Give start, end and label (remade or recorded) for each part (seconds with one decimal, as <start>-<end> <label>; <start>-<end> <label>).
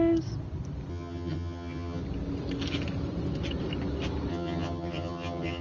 0.0-0.9 recorded; 0.9-2.0 remade; 2.0-4.3 recorded; 4.3-5.6 remade